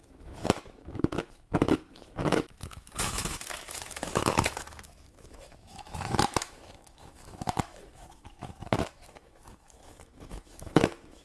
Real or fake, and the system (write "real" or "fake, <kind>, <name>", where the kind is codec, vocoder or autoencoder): fake, autoencoder, DAC-VAE